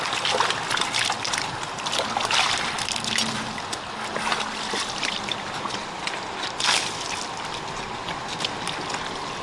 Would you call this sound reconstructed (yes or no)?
no